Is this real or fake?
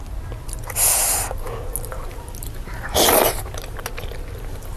real